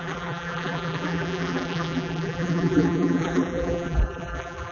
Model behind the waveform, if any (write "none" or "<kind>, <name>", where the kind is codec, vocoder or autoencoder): vocoder, BigVGAN v2